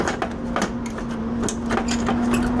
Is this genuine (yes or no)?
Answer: yes